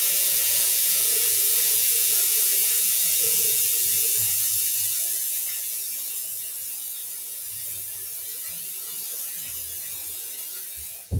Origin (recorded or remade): remade